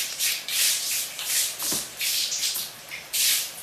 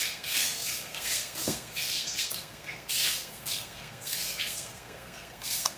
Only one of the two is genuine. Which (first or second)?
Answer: first